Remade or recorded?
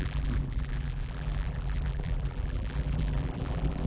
remade